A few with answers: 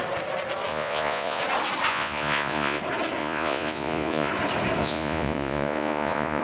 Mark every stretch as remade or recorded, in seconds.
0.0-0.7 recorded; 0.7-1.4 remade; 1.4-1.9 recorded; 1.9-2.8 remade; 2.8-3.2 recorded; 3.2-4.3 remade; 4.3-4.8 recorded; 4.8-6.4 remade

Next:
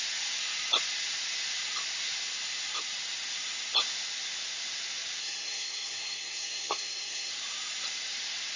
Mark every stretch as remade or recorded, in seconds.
0.0-5.2 recorded; 5.2-7.3 remade; 7.3-8.6 recorded

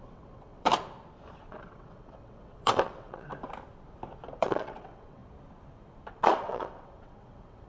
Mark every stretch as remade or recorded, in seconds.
0.0-0.7 remade; 0.7-1.5 recorded; 1.5-3.3 remade; 3.3-4.3 recorded; 4.3-5.2 remade; 5.2-6.1 recorded; 6.1-7.7 remade

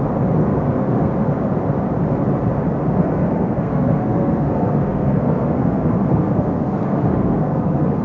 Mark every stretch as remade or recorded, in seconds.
0.0-0.4 recorded; 0.4-1.2 remade; 1.2-3.0 recorded; 3.0-8.0 remade

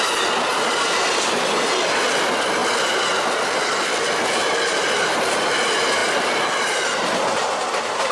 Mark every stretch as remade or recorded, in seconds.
0.0-8.1 recorded

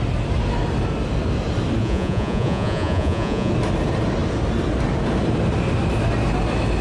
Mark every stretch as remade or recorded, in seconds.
0.0-1.8 recorded; 1.8-3.5 remade; 3.5-6.8 recorded